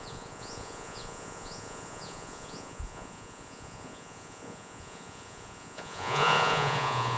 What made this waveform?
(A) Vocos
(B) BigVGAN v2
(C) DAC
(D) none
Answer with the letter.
A